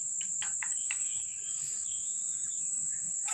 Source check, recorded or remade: remade